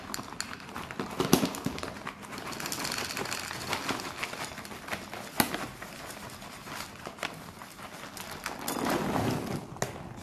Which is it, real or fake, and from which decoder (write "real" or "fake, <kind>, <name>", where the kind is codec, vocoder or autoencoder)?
real